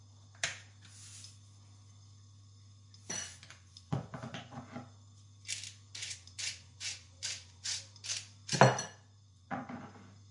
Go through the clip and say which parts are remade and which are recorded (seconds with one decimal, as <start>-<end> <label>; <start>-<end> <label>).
0.0-3.2 recorded; 3.2-4.6 remade; 4.6-6.0 recorded; 6.0-7.8 remade; 7.8-9.3 recorded; 9.3-9.8 remade; 9.8-10.3 recorded